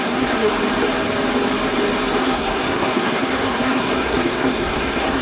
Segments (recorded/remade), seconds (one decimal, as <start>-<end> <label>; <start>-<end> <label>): 0.0-0.5 remade; 0.5-2.2 recorded; 2.2-5.2 remade

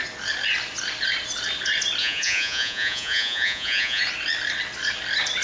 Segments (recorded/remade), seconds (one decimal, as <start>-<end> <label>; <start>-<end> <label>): 0.0-2.0 recorded; 2.0-4.0 remade; 4.0-5.4 recorded